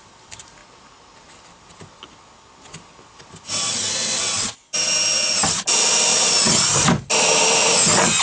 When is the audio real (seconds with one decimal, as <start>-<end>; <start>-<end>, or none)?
0.6-5.3

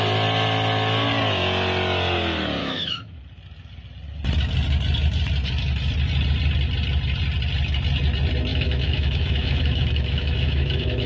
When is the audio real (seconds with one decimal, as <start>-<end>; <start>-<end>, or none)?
0.0-2.6; 3.2-8.5

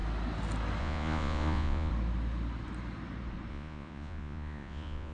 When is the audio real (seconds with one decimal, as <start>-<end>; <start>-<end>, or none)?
0.0-0.8; 1.9-3.5

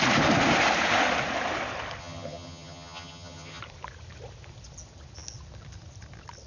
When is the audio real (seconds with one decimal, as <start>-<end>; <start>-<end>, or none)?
0.0-2.0; 3.6-6.5